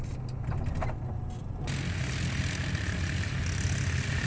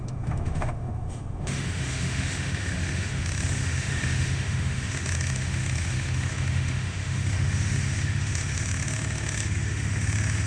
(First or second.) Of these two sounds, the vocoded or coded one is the second